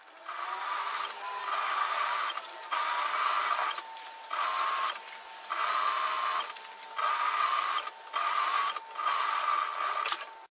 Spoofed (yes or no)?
no